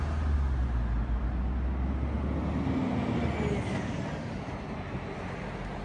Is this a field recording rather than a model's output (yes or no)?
yes